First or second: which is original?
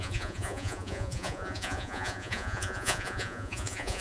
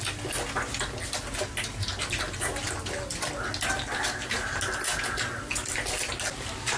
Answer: second